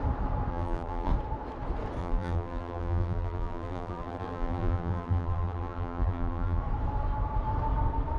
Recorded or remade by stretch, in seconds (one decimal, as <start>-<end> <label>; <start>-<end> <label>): 0.0-0.5 recorded; 0.5-1.1 remade; 1.1-2.0 recorded; 2.0-6.6 remade; 6.6-8.2 recorded